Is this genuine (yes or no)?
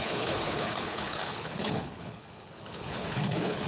no